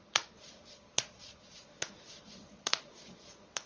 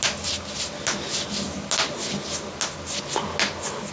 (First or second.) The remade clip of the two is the first